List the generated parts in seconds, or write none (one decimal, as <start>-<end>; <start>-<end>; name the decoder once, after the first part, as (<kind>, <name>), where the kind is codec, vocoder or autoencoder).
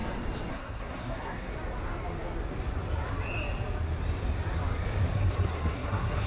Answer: 0.5-1.5 (codec, SNAC); 5.1-6.3